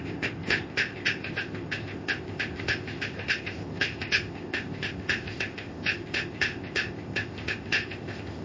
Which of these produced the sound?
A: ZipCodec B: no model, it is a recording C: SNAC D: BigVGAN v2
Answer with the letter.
A